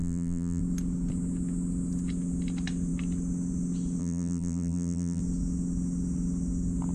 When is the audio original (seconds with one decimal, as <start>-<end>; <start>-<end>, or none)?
0.6-4.0; 5.2-6.9